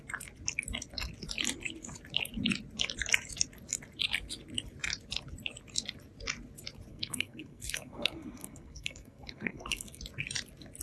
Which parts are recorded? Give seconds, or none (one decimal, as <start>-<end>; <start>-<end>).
0.0-6.9; 10.0-10.8